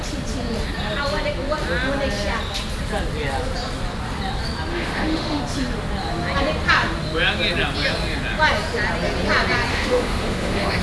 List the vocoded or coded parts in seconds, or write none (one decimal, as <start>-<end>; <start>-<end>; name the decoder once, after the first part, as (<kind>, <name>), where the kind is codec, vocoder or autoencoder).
4.7-5.4 (autoencoder, DAC-VAE); 9.7-10.8